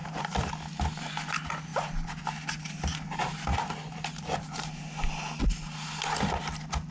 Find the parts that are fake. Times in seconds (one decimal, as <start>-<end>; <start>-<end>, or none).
0.0-0.5; 1.7-2.2; 3.5-4.8